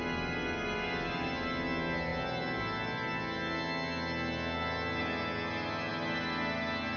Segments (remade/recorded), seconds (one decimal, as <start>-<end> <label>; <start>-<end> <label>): 0.0-7.0 recorded